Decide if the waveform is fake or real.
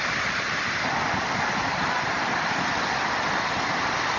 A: real